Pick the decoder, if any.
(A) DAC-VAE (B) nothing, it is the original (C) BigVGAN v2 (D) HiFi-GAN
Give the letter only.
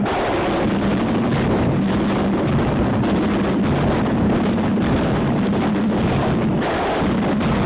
B